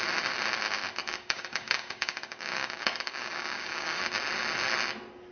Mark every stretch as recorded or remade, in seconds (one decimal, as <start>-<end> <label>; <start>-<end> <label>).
0.0-1.0 recorded; 1.0-4.0 remade; 4.0-5.3 recorded